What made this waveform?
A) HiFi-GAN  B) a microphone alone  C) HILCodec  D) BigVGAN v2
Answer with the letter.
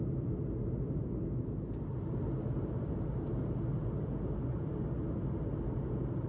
B